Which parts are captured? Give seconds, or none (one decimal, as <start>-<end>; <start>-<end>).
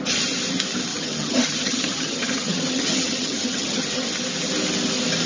0.0-0.9; 4.1-5.3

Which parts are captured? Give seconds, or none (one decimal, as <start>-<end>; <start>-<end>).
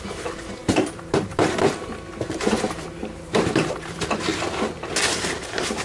4.3-5.8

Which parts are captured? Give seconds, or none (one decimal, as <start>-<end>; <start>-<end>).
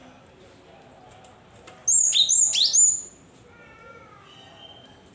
0.0-5.1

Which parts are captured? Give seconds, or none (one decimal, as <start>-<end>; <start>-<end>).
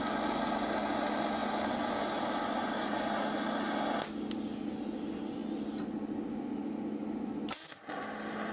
0.0-8.5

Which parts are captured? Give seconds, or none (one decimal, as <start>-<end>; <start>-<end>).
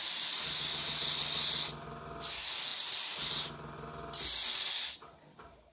0.0-5.7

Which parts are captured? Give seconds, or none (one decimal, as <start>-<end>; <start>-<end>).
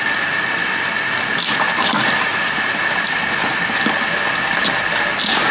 0.0-5.5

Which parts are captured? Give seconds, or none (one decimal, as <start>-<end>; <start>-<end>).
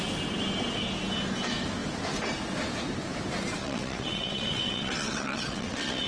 0.0-3.6